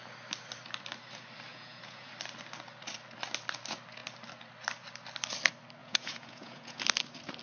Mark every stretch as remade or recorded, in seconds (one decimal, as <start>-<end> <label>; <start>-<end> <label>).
0.0-1.5 recorded; 1.5-2.1 remade; 2.1-5.8 recorded; 5.8-6.8 remade; 6.8-7.4 recorded